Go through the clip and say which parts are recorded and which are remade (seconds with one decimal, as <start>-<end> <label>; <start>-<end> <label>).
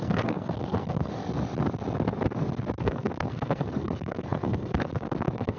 0.0-1.2 remade; 1.2-2.8 recorded; 2.8-5.6 remade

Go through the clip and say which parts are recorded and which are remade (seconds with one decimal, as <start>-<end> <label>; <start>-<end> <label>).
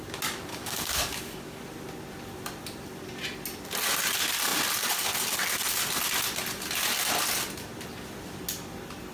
0.0-0.5 recorded; 0.5-1.6 remade; 1.6-9.1 recorded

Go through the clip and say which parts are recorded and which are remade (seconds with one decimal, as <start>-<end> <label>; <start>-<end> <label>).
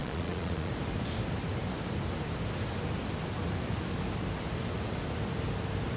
0.0-0.7 remade; 0.7-6.0 recorded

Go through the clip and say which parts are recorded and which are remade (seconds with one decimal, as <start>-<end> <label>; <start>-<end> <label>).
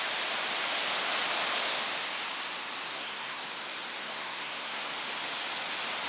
0.0-2.9 recorded; 2.9-3.4 remade; 3.4-4.0 recorded; 4.0-4.9 remade; 4.9-6.1 recorded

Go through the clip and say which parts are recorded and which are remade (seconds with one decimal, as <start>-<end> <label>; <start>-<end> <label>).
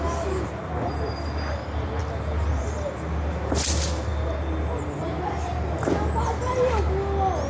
0.0-7.5 recorded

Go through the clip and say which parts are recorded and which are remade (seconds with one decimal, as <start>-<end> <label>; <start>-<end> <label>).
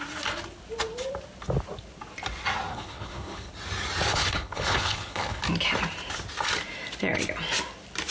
0.0-2.7 recorded; 2.7-3.5 remade; 3.5-4.1 recorded; 4.1-5.4 remade; 5.4-8.1 recorded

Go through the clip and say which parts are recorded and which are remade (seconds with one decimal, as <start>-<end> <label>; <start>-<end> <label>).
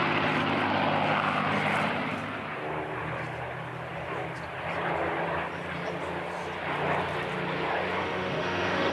0.0-8.0 recorded; 8.0-8.9 remade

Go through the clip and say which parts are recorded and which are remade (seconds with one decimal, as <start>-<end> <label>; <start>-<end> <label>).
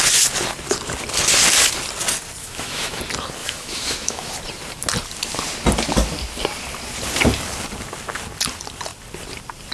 0.0-2.4 recorded; 2.4-3.0 remade; 3.0-3.4 recorded; 3.4-4.3 remade; 4.3-9.7 recorded